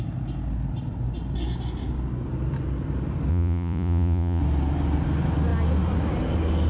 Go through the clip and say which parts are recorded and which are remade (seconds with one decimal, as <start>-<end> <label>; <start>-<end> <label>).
0.0-3.3 recorded; 3.3-4.4 remade; 4.4-6.7 recorded